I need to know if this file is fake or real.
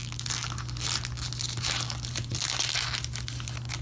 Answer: real